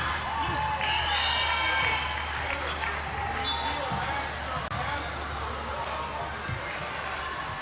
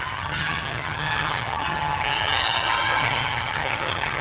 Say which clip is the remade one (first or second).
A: second